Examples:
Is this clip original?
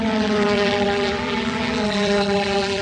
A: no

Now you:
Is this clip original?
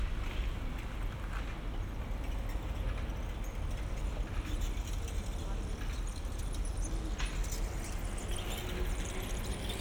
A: yes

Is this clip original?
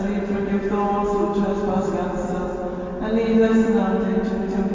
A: yes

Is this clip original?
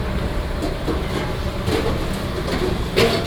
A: yes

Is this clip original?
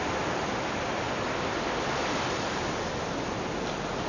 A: no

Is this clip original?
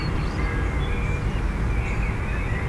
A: yes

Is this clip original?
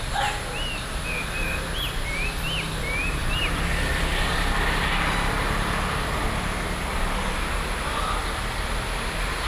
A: yes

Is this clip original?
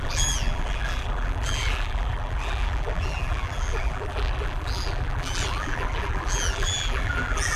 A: no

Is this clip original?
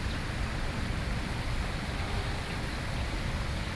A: yes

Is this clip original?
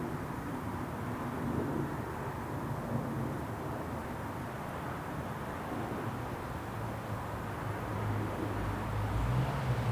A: no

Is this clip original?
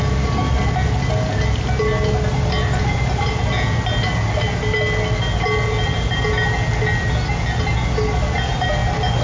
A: yes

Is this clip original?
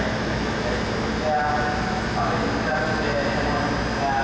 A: yes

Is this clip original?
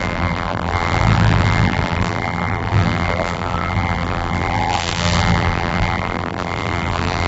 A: no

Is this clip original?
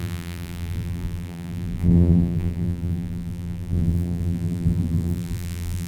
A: no